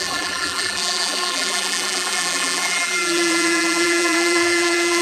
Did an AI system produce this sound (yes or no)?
yes